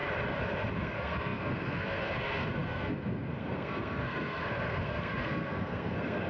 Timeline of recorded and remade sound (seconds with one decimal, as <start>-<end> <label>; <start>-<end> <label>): 0.0-0.7 recorded; 0.7-6.3 remade